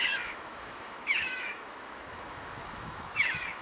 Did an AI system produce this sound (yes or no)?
yes